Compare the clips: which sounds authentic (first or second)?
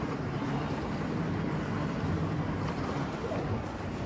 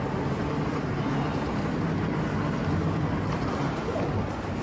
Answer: second